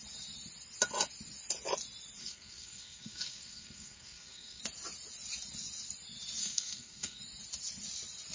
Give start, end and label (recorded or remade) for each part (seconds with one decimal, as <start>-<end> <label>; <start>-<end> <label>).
0.0-2.2 recorded; 2.2-4.6 remade; 4.6-6.4 recorded; 6.4-7.2 remade; 7.2-8.3 recorded